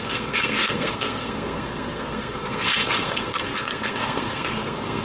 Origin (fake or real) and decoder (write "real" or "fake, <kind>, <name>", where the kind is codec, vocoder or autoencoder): fake, codec, SNAC